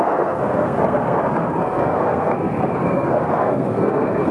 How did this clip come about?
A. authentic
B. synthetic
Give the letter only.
B